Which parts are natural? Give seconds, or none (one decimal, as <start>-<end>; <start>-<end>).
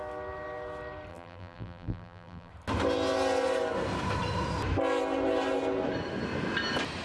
0.0-1.1; 2.5-7.0